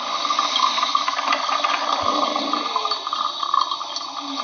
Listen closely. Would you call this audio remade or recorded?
recorded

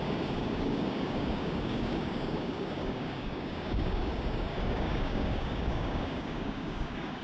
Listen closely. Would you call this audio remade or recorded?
remade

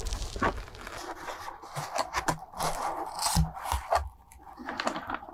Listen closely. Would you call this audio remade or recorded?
recorded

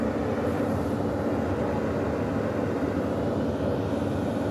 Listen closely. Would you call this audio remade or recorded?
recorded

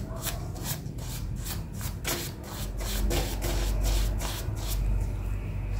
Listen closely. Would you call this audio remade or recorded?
recorded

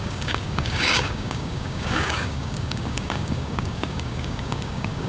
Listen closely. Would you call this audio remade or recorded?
remade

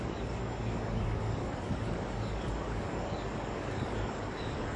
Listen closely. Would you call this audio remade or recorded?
remade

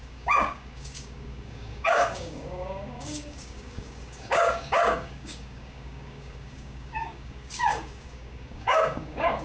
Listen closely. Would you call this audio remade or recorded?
remade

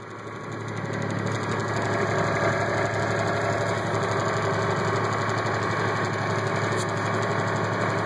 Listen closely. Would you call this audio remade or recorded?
recorded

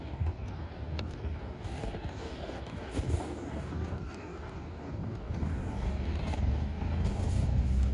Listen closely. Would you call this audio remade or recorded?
remade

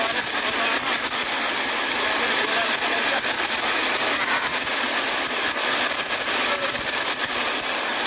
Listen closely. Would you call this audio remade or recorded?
recorded